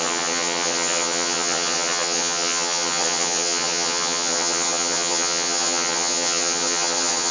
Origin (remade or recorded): remade